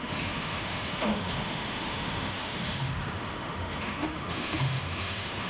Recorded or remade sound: remade